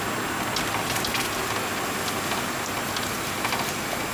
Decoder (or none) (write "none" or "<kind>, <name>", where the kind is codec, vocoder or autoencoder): none